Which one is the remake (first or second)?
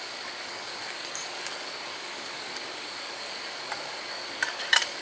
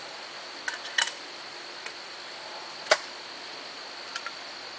first